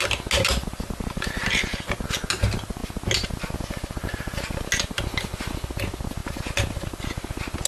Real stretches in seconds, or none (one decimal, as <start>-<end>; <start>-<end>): 0.0-7.7